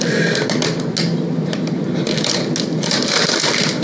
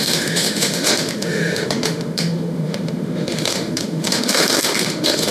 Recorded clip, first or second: first